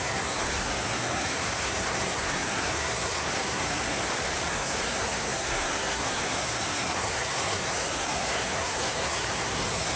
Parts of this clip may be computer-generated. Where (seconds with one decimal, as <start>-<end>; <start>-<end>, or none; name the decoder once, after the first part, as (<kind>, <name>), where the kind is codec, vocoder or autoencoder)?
0.0-4.0 (codec, SNAC); 4.5-10.0